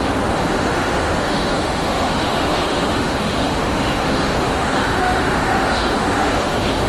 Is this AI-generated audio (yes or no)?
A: yes